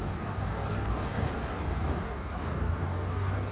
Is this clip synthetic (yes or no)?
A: yes